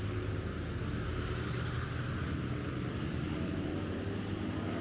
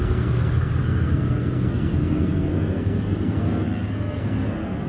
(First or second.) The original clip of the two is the first